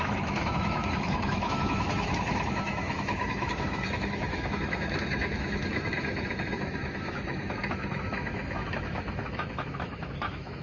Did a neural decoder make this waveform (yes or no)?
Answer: yes